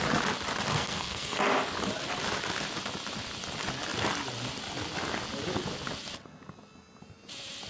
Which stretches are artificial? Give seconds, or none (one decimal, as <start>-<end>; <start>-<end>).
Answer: 0.7-1.4

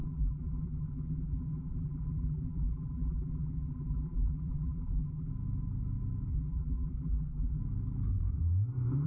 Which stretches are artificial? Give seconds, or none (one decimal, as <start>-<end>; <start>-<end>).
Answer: 0.0-5.3; 6.3-7.6

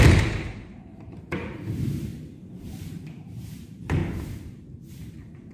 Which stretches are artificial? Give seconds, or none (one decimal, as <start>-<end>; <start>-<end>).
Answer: 0.0-2.1; 2.6-4.0; 4.9-5.5

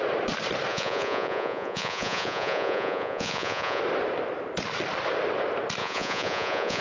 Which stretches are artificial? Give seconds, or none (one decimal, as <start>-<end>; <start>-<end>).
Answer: 0.7-3.8; 5.8-6.8

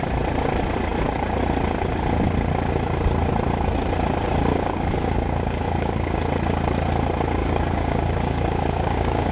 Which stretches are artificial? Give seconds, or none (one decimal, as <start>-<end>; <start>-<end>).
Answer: 4.5-6.2; 7.4-9.3

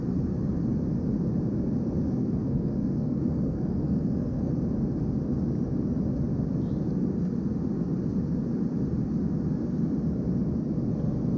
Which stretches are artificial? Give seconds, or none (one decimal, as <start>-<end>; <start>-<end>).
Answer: 2.2-4.5

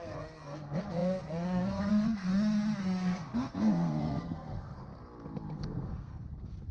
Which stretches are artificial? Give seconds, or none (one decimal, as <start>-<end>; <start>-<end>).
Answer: 0.0-2.3; 2.8-4.9; 5.5-6.7

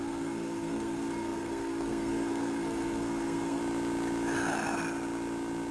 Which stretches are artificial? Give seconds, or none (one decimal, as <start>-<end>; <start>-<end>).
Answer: 0.0-3.6